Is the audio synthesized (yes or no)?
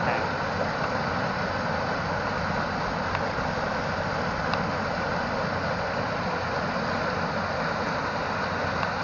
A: no